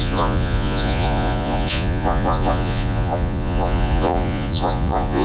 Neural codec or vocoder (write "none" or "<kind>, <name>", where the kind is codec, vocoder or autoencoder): vocoder, Vocos